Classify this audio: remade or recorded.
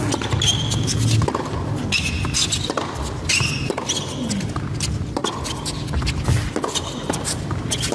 recorded